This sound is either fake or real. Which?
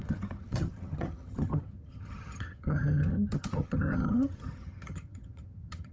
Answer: fake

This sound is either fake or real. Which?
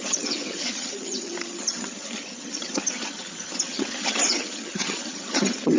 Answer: fake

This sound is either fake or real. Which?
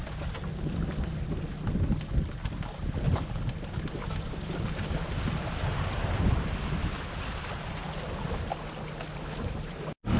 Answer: real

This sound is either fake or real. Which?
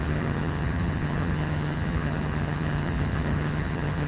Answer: fake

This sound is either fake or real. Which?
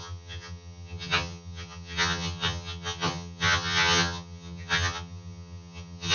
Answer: fake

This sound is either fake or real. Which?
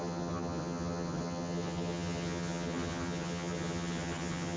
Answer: fake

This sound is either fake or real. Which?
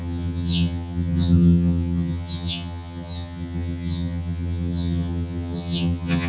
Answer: fake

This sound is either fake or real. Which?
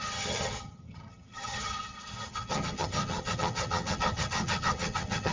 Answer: fake